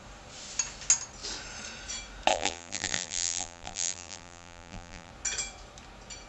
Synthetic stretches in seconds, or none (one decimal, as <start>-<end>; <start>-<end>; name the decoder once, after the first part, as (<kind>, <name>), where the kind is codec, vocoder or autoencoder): 2.3-5.1 (vocoder, BigVGAN v2)

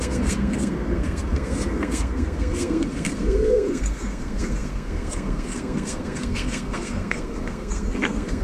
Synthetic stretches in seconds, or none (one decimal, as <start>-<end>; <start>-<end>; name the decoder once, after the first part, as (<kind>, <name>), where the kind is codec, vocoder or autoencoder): 0.0-8.4 (codec, SNAC)

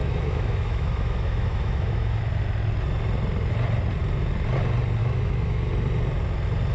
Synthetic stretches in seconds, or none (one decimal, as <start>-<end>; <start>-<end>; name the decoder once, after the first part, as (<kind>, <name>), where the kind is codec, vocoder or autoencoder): 0.0-2.2 (autoencoder, DAC-VAE); 5.0-5.7